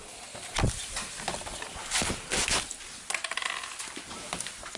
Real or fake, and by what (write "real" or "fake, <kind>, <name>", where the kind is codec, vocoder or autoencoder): real